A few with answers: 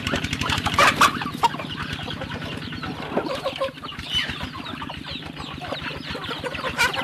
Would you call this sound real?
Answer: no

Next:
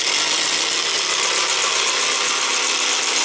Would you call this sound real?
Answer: yes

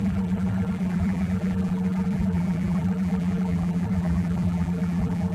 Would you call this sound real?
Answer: no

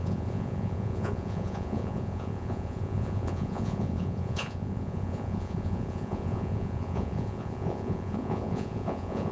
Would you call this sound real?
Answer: no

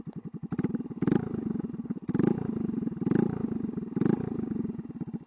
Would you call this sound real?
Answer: yes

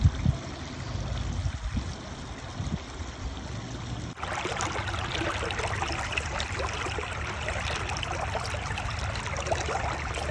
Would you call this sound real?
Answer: yes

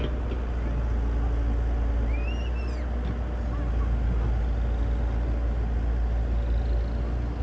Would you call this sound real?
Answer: yes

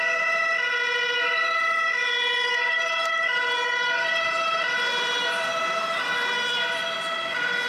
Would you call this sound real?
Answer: yes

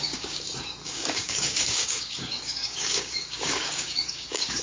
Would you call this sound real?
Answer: no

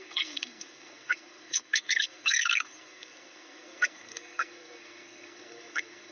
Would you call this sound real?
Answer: no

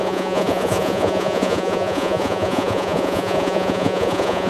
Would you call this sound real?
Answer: no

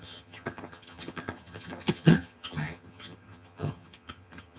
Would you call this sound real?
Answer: no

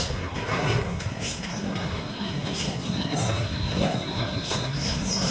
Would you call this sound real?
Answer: no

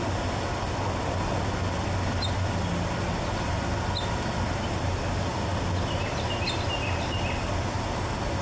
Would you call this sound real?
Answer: yes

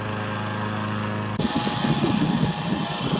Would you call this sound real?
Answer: yes